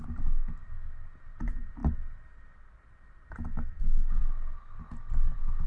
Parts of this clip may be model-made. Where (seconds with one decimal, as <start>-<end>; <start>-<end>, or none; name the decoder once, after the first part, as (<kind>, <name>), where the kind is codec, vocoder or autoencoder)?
none